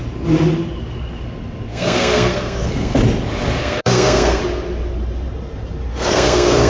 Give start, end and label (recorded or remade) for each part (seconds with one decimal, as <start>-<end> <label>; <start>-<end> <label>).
0.0-1.7 recorded; 1.7-3.0 remade; 3.0-3.6 recorded; 3.6-4.4 remade; 4.4-5.9 recorded; 5.9-6.7 remade